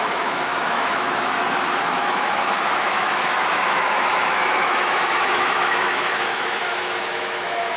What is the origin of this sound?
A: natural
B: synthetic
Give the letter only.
B